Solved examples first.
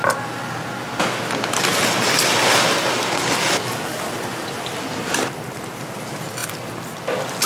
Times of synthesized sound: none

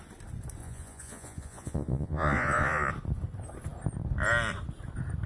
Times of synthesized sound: 0.6-2.9 (vocoder, Vocos)

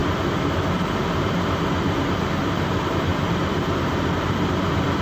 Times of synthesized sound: 1.1-5.0 (vocoder, BigVGAN v2)

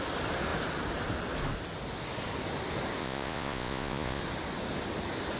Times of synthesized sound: 3.0-4.2 (vocoder, Vocos)

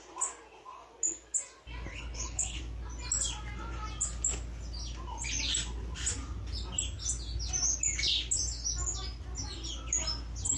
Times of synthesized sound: 1.9-2.6 (codec, HILCodec)

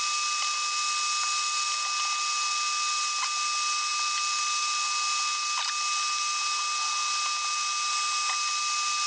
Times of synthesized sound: none